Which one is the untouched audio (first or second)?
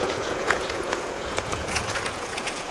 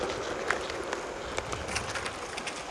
second